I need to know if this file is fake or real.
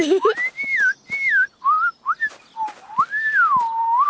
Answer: real